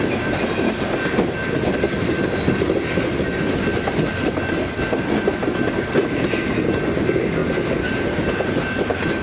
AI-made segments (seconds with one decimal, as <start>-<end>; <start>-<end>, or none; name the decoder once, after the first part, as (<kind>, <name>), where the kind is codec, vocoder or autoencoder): none